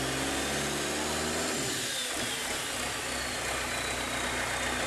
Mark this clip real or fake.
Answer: real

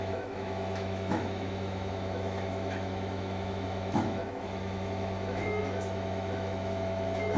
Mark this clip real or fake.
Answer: fake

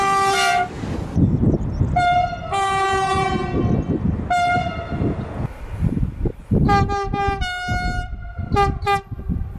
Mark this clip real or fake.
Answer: real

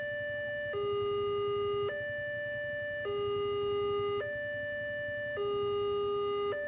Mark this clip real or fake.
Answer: real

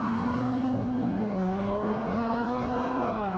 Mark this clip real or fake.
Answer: fake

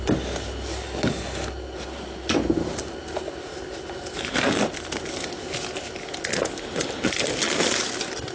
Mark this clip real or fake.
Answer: real